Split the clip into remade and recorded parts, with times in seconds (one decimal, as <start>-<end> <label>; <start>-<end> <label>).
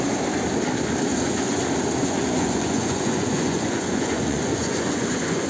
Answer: 0.0-1.1 recorded; 1.1-1.6 remade; 1.6-2.0 recorded; 2.0-5.5 remade